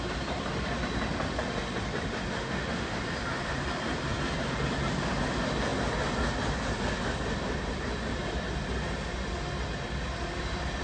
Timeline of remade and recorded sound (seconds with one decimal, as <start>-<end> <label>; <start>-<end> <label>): 0.0-2.4 recorded; 2.4-3.0 remade; 3.0-10.8 recorded